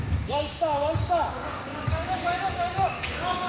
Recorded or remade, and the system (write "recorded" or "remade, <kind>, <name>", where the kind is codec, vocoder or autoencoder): remade, codec, DAC